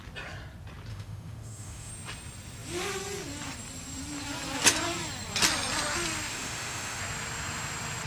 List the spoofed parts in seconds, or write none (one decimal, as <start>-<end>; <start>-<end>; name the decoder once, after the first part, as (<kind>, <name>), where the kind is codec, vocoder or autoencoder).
0.9-1.9 (autoencoder, DAC-VAE); 6.3-7.0